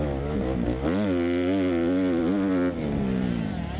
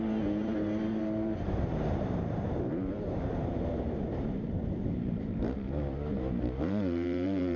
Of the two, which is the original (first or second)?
first